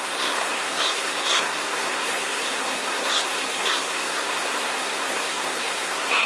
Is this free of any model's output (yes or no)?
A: no